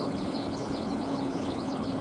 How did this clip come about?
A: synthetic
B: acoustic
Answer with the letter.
A